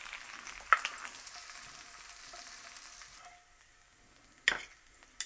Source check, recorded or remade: recorded